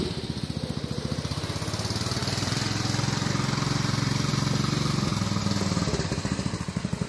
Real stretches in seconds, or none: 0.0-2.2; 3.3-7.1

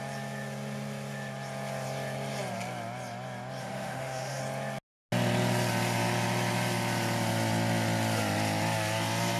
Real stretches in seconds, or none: 0.0-3.6; 4.4-9.4

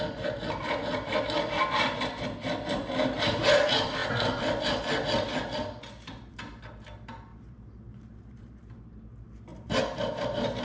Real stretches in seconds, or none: 0.0-7.3; 9.0-9.5